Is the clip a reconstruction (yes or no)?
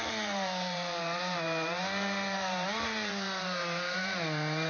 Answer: yes